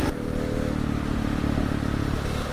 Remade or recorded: recorded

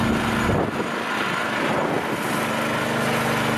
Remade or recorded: recorded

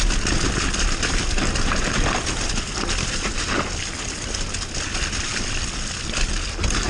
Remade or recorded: recorded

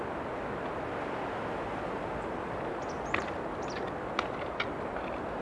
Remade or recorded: recorded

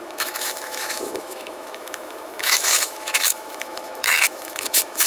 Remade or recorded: remade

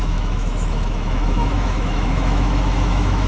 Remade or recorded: remade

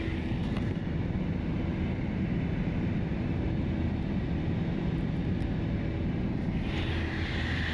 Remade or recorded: recorded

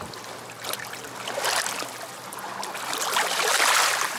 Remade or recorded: recorded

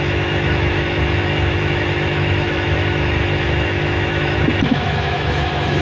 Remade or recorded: remade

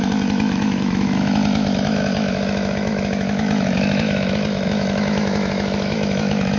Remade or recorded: remade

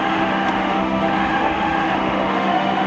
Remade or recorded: remade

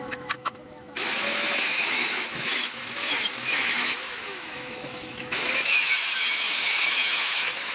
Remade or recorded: remade